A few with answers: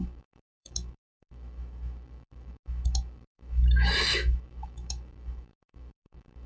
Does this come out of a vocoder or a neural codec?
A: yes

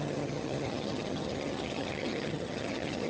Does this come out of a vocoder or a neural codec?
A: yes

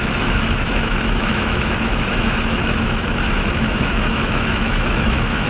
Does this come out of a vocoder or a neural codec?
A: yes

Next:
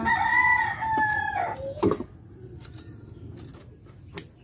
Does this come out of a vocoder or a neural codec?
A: no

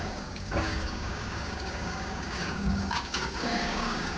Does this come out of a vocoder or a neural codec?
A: yes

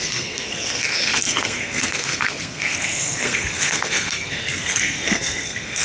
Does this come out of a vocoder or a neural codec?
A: yes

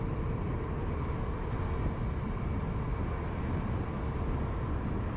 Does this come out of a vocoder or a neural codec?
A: no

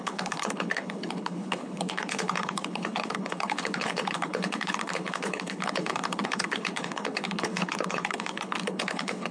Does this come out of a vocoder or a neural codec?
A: yes